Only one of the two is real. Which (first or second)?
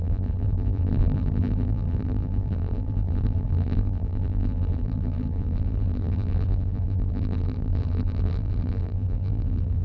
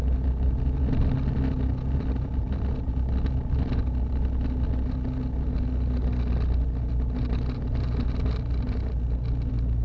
second